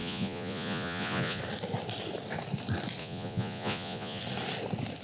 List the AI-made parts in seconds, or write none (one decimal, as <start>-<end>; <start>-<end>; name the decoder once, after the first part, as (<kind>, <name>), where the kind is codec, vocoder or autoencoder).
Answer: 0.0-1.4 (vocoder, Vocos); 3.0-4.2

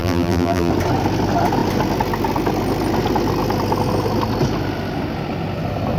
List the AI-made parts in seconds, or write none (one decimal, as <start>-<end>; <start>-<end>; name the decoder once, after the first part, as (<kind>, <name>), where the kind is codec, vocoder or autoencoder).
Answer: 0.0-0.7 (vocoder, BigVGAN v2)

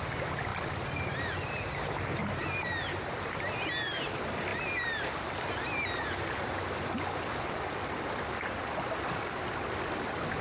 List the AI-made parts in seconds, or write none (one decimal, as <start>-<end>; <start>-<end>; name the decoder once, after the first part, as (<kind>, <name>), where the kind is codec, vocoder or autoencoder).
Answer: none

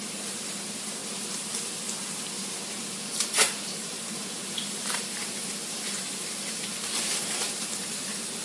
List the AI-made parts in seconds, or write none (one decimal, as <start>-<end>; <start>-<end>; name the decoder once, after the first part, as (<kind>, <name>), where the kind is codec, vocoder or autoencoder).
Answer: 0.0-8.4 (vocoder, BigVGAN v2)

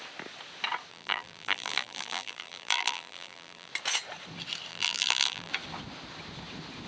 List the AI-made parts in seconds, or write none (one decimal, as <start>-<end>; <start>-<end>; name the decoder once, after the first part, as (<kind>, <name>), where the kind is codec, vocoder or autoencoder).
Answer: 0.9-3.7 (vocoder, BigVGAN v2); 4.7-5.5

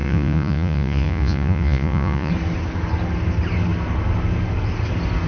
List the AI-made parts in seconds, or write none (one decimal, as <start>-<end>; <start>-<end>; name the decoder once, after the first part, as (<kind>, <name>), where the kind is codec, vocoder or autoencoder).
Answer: 0.0-2.3 (vocoder, Vocos)